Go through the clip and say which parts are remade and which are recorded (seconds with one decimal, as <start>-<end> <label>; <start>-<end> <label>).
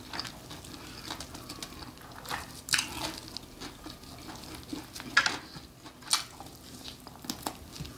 0.0-8.0 recorded